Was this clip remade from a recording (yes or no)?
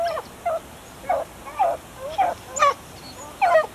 no